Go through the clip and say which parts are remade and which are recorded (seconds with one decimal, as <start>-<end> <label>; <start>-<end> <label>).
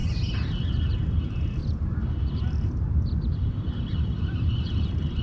0.0-1.6 recorded; 1.6-4.5 remade; 4.5-5.2 recorded